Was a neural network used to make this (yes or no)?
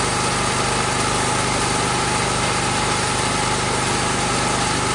no